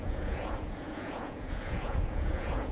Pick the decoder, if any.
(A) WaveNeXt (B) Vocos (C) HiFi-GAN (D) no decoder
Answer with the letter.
B